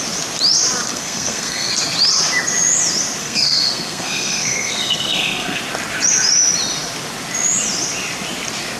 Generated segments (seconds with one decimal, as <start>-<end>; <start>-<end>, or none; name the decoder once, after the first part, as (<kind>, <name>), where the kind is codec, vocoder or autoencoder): 0.9-1.7 (codec, SNAC); 3.2-5.6